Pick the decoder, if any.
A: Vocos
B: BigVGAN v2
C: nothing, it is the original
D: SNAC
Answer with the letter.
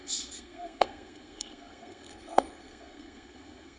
D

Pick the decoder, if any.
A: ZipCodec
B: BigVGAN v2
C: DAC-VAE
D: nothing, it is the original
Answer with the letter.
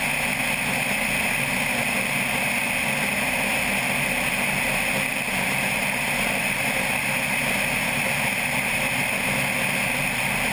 D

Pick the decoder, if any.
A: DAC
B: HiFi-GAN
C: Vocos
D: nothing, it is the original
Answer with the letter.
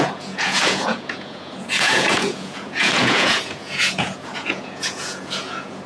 C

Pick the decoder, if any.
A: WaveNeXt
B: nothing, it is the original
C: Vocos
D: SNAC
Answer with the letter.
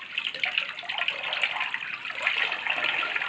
B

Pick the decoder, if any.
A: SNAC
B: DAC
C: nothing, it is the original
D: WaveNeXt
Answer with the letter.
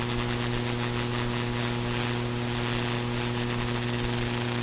C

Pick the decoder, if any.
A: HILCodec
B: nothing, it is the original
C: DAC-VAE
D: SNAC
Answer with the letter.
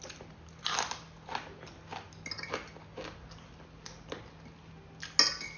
B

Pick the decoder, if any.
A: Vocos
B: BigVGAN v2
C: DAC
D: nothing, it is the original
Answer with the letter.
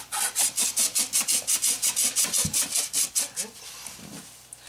D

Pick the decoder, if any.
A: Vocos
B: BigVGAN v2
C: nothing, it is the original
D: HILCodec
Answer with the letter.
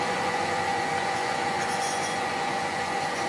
A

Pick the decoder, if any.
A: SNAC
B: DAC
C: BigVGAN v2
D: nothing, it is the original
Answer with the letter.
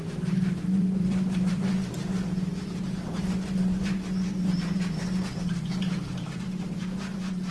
C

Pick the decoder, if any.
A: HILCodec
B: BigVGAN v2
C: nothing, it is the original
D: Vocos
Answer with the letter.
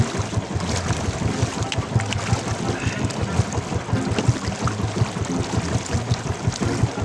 C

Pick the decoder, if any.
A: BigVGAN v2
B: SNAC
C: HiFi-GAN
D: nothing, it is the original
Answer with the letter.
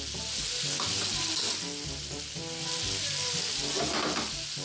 D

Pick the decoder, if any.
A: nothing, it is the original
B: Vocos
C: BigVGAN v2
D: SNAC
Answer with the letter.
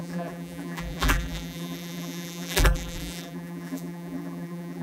C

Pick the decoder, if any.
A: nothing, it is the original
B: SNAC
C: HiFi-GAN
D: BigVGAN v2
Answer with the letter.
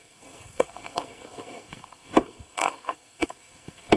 B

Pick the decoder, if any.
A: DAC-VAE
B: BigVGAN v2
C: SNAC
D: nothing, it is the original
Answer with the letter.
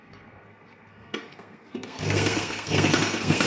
C